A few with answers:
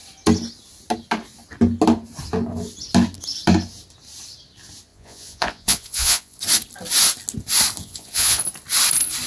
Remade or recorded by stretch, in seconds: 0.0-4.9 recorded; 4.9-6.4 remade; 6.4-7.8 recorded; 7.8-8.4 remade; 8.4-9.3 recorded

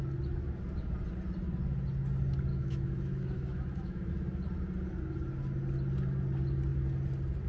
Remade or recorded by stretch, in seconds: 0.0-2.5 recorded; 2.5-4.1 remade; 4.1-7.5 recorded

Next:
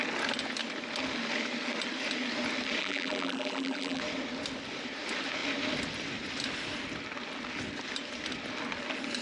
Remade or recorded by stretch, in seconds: 0.0-2.8 recorded; 2.8-4.0 remade; 4.0-9.2 recorded

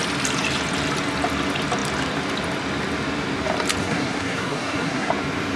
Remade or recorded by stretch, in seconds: 0.0-3.8 recorded; 3.8-5.1 remade; 5.1-5.6 recorded

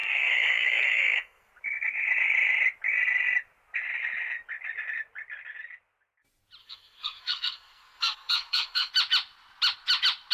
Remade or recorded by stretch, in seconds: 0.0-1.5 remade; 1.5-6.6 recorded; 6.6-8.9 remade; 8.9-10.3 recorded

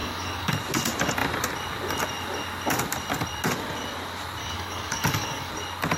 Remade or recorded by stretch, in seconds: 0.0-0.5 remade; 0.5-4.4 recorded; 4.4-5.5 remade; 5.5-6.0 recorded

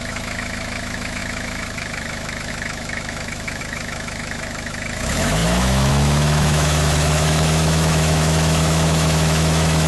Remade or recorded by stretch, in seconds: 0.0-9.9 remade